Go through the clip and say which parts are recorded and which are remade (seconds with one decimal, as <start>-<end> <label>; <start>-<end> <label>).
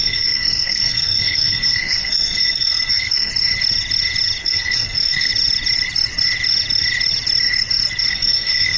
0.0-3.3 remade; 3.3-4.4 recorded; 4.4-5.3 remade; 5.3-8.1 recorded; 8.1-8.8 remade